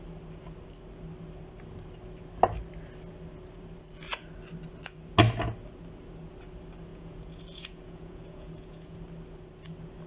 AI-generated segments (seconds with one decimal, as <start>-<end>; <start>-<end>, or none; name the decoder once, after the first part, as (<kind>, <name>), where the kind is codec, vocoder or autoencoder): 6.9-9.0 (vocoder, Vocos)